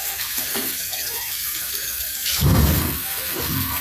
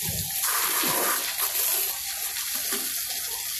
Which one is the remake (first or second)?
first